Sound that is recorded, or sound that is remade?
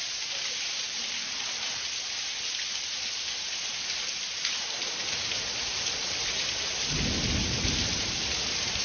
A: recorded